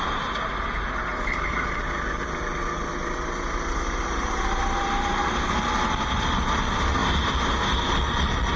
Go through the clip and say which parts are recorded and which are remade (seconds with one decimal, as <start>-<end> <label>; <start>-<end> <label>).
0.0-8.6 recorded